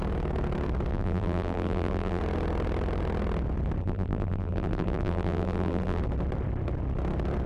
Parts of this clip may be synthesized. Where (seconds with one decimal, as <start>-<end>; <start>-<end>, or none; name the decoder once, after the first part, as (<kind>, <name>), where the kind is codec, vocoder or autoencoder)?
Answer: 0.9-2.2 (vocoder, BigVGAN v2); 3.8-6.0